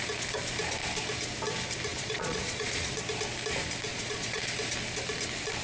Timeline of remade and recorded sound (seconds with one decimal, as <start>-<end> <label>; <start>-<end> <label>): 0.0-1.9 recorded; 1.9-3.0 remade; 3.0-3.9 recorded; 3.9-4.4 remade; 4.4-5.6 recorded